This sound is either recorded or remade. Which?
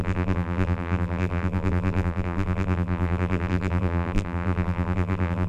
remade